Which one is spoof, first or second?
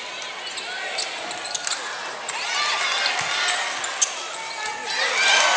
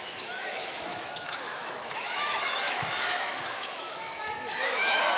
second